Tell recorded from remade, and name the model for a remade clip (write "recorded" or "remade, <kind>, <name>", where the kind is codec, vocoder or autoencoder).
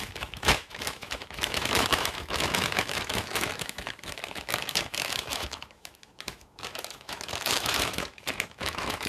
remade, autoencoder, DAC-VAE